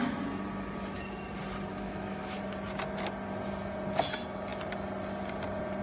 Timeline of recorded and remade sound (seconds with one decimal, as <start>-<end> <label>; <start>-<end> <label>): 0.0-1.7 recorded; 1.7-2.4 remade; 2.4-5.8 recorded